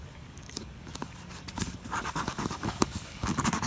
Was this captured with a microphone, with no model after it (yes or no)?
no